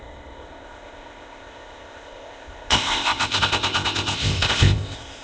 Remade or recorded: remade